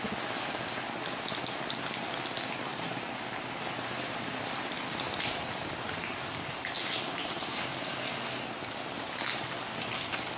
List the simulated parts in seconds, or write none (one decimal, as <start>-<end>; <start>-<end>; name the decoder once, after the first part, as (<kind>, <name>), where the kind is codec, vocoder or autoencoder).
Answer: 2.7-7.6 (vocoder, BigVGAN v2)